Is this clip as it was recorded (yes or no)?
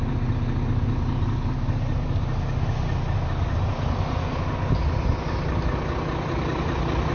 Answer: yes